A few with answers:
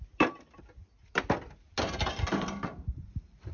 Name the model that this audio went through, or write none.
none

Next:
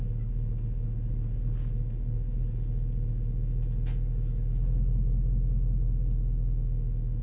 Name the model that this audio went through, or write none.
none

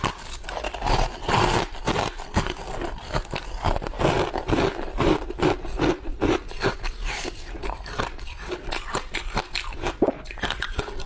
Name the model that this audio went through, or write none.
none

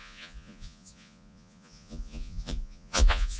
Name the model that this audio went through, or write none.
vocoder, Vocos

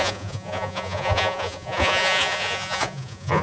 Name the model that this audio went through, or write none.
vocoder, Vocos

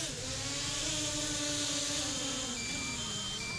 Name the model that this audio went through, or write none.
none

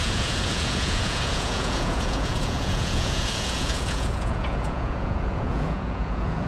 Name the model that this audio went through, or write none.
vocoder, Vocos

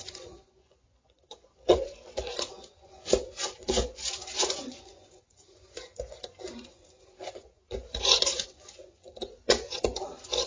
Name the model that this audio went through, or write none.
vocoder, Vocos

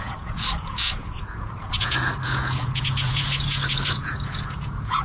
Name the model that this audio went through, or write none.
vocoder, Vocos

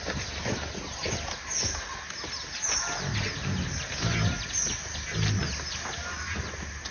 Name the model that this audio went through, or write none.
none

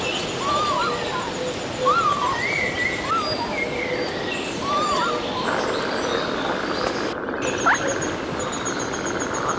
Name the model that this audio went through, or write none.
none